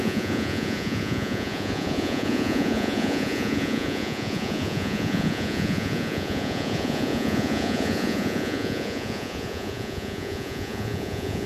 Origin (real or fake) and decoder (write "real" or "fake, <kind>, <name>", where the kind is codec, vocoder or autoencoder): fake, vocoder, Vocos